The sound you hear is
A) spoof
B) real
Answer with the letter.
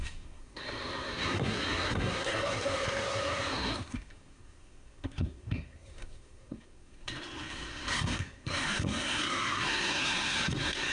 A